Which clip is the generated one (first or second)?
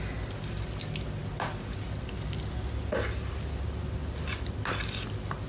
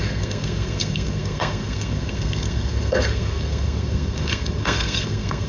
second